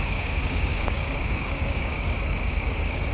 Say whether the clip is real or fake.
fake